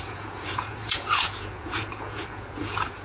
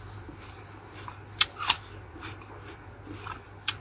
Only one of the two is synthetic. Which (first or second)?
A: first